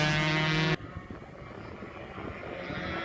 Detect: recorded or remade recorded